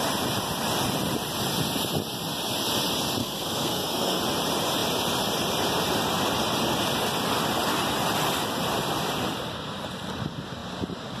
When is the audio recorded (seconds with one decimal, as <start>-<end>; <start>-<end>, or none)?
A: 0.0-3.2; 4.2-11.2